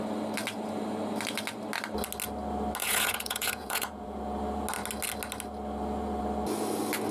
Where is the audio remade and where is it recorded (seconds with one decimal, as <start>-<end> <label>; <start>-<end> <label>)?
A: 0.0-2.8 recorded; 2.8-4.2 remade; 4.2-7.1 recorded